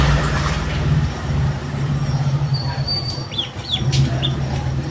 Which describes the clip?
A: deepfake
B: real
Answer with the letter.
A